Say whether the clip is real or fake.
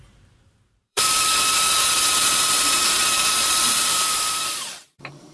fake